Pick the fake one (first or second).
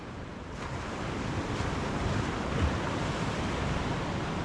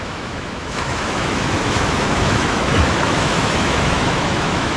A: second